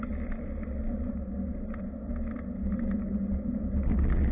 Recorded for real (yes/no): yes